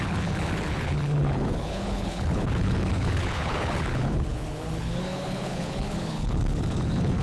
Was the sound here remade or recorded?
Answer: remade